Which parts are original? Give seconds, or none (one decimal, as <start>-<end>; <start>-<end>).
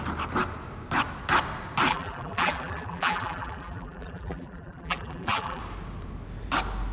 0.0-1.9; 5.6-6.9